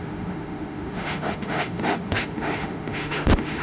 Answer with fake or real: fake